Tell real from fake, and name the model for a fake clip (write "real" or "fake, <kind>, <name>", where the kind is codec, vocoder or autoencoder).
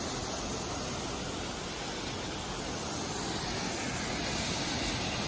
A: real